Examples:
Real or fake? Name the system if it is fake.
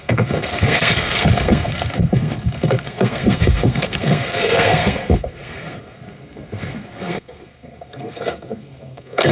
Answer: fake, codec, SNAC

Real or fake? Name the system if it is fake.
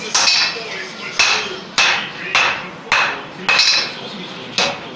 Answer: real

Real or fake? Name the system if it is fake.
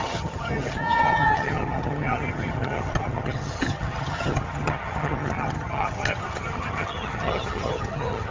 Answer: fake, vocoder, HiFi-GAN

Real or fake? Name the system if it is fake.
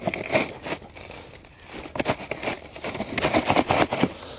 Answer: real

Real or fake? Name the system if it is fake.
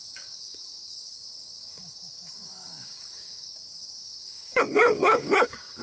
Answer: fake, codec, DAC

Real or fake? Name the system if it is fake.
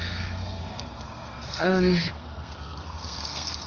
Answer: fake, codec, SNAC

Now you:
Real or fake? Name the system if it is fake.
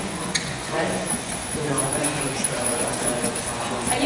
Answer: fake, vocoder, Vocos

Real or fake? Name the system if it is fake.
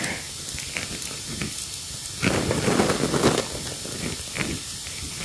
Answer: real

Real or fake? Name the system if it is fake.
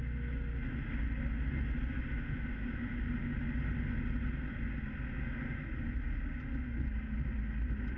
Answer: real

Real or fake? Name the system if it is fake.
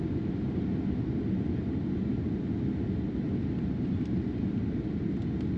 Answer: real